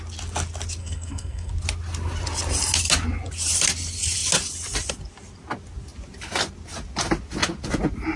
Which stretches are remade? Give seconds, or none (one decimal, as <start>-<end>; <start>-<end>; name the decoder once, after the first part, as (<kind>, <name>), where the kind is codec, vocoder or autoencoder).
0.8-1.5 (codec, SNAC)